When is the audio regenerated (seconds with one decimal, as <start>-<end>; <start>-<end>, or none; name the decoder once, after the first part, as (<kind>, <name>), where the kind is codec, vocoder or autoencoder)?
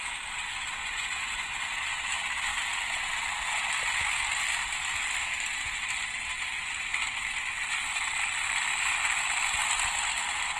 0.8-1.6 (vocoder, Vocos)